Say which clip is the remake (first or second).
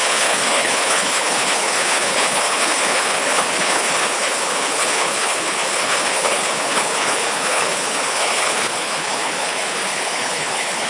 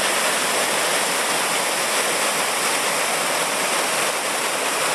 first